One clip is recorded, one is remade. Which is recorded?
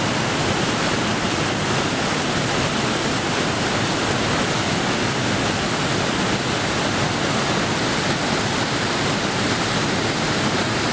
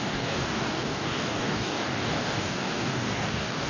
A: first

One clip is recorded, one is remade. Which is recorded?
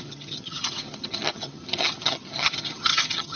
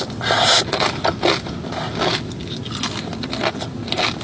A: second